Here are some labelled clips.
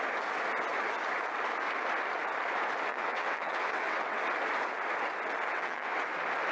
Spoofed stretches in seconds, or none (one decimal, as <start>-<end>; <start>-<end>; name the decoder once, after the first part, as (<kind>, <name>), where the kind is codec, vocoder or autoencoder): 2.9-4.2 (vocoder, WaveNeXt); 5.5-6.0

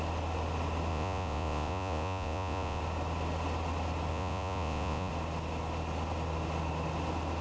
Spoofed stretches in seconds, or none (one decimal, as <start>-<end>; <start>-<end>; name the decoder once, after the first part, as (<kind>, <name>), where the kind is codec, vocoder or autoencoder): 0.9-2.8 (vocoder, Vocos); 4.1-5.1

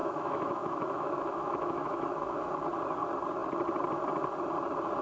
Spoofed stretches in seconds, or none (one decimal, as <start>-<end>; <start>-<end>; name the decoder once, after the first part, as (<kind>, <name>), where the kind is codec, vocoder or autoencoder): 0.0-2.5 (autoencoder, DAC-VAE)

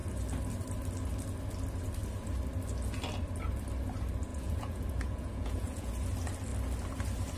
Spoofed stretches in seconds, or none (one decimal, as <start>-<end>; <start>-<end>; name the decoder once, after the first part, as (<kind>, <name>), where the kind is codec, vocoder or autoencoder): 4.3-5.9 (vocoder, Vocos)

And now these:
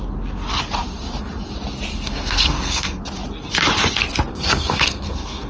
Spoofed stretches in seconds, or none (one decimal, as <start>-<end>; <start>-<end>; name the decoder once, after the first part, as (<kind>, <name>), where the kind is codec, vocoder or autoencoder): 1.9-3.0 (codec, SNAC); 4.3-5.5

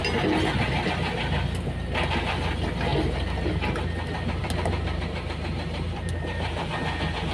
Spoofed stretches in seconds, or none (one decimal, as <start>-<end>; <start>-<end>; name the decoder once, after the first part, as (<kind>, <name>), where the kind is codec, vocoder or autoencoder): 2.9-3.5 (vocoder, BigVGAN v2); 4.4-6.6